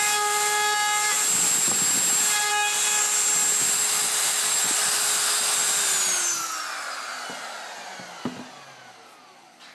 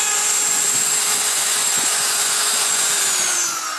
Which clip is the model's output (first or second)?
second